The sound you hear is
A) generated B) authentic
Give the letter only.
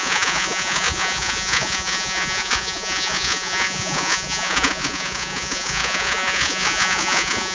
A